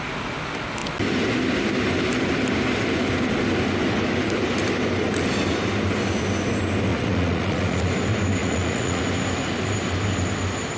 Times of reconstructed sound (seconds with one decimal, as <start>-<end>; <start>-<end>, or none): 6.9-7.9; 8.4-9.0